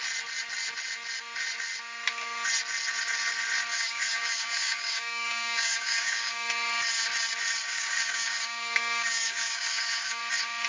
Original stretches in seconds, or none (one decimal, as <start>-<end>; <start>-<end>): 0.0-3.7; 6.5-7.6; 10.2-10.7